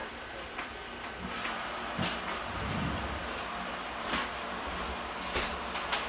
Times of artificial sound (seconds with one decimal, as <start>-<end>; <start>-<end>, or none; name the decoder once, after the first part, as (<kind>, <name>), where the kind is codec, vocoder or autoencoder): 0.0-1.1 (vocoder, BigVGAN v2)